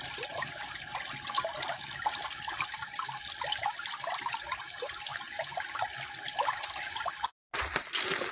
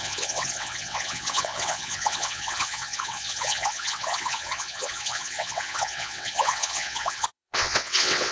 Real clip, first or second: first